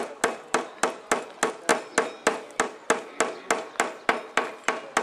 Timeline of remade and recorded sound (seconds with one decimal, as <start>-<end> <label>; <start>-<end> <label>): 0.0-5.0 recorded

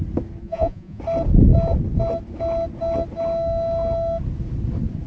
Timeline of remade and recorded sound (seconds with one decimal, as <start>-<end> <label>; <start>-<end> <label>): 0.0-0.4 recorded; 0.4-1.0 remade; 1.0-5.1 recorded